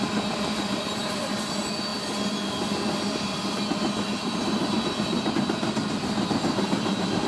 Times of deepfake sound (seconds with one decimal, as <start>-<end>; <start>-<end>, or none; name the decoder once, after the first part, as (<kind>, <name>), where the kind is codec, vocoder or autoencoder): none